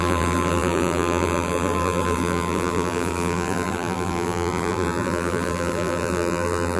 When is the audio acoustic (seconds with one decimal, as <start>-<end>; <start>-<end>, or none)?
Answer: none